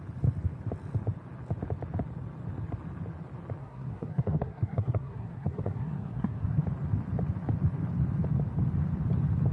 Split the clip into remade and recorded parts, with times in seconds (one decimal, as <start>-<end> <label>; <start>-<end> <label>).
0.0-3.6 recorded; 3.6-6.6 remade; 6.6-9.5 recorded